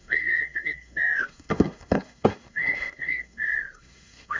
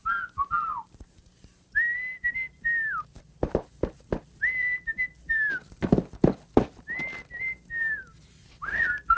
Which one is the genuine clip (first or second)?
second